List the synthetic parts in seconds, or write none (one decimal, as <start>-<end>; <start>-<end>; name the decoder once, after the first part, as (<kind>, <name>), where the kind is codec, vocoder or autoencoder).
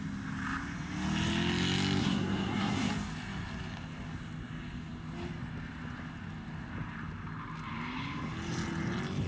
2.0-2.9 (codec, SNAC)